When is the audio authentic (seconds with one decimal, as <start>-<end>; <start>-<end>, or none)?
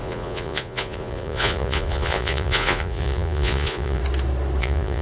4.0-4.6